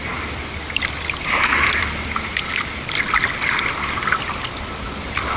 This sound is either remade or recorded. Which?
remade